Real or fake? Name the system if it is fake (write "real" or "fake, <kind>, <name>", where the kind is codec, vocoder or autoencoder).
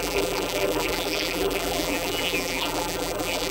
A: fake, vocoder, BigVGAN v2